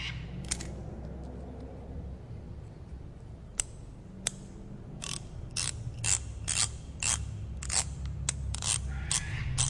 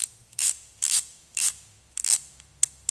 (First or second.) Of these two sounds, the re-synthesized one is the second